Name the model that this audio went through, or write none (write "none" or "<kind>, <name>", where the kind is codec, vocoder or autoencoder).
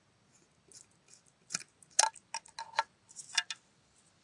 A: none